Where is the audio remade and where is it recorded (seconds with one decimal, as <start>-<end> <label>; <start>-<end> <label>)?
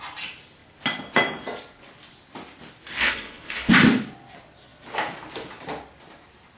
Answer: 0.0-3.0 recorded; 3.0-3.7 remade; 3.7-6.6 recorded